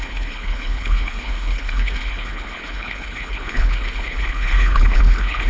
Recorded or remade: remade